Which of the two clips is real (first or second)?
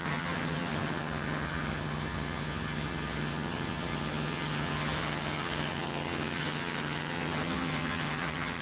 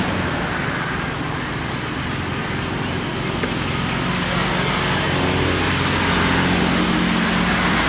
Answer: second